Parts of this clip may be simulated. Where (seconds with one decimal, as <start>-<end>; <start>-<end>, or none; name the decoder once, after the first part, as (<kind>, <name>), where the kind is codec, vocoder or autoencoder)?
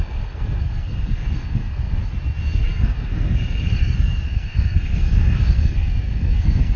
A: 0.0-2.0 (codec, SNAC); 2.6-6.8